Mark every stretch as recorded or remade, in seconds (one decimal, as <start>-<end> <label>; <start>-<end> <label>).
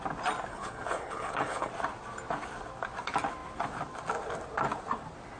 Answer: 0.0-0.5 recorded; 0.5-1.7 remade; 1.7-5.4 recorded